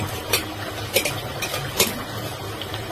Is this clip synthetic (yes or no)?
no